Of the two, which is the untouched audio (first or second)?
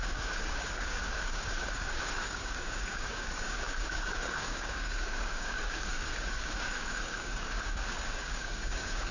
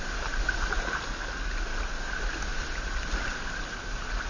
second